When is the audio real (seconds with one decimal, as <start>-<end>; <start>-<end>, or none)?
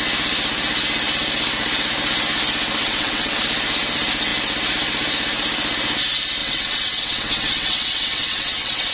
0.0-2.8; 3.4-6.4